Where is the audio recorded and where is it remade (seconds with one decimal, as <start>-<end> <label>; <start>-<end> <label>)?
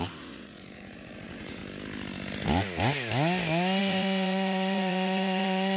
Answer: 0.0-1.6 remade; 1.6-3.8 recorded; 3.8-5.8 remade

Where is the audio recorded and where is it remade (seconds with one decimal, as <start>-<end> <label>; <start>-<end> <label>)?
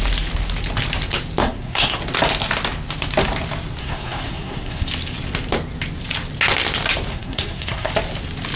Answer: 0.0-1.4 recorded; 1.4-2.0 remade; 2.0-3.8 recorded; 3.8-4.9 remade; 4.9-7.1 recorded; 7.1-7.9 remade; 7.9-8.6 recorded